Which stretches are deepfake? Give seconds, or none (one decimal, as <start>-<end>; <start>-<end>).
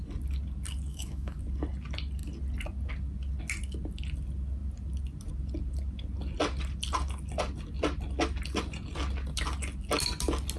0.9-1.4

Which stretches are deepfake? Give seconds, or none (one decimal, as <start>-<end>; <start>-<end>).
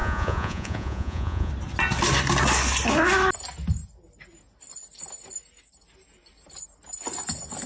0.0-1.5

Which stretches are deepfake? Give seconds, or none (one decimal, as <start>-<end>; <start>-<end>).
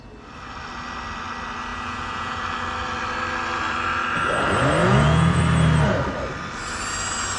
1.7-2.4; 4.8-5.4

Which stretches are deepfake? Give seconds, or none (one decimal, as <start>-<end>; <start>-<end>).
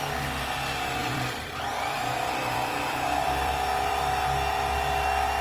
1.0-4.2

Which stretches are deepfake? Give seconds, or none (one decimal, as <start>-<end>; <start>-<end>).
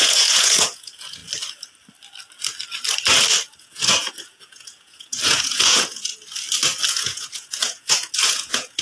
0.0-1.2; 3.6-6.1; 6.9-8.8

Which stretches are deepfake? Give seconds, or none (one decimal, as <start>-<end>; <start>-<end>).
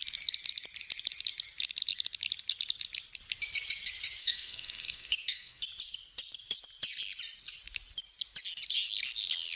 4.2-5.6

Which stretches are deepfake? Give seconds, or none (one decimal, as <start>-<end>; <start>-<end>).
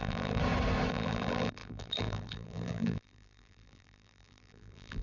0.0-0.4; 0.9-5.0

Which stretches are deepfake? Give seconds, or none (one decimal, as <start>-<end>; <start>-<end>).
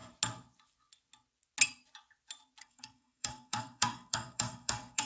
2.6-5.1